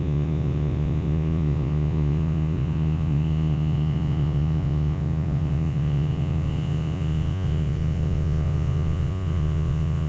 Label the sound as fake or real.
fake